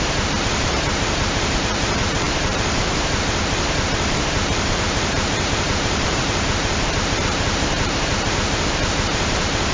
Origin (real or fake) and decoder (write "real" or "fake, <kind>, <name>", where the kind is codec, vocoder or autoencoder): fake, vocoder, BigVGAN v2